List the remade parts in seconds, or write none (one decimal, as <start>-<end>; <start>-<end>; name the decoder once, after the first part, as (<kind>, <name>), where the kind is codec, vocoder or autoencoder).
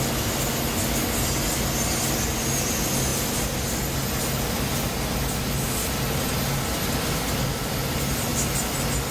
none